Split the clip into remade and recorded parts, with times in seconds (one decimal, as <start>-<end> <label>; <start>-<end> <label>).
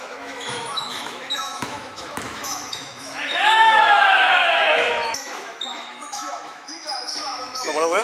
0.0-8.0 remade